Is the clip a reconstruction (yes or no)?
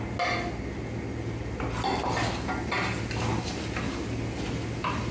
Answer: no